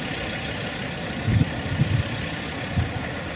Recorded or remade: recorded